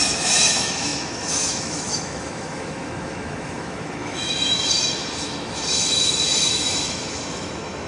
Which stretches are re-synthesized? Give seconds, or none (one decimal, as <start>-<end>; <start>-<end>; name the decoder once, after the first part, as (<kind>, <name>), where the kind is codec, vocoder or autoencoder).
0.0-7.9 (autoencoder, DAC-VAE)